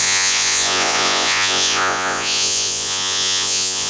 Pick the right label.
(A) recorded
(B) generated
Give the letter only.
B